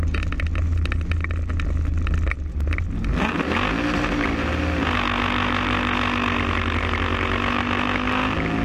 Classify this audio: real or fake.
real